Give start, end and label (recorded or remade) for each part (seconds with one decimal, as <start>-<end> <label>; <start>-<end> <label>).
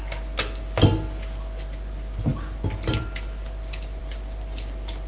0.0-5.1 recorded